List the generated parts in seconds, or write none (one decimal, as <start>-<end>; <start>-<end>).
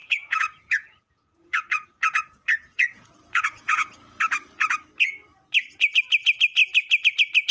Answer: 0.0-4.2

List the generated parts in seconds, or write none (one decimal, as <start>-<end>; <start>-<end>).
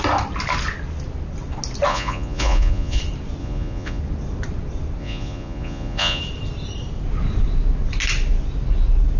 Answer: 1.9-3.0; 3.4-4.0; 5.0-6.2